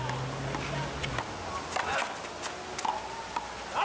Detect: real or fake real